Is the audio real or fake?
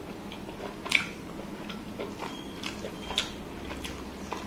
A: real